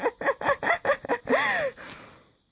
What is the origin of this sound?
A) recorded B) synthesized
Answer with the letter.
A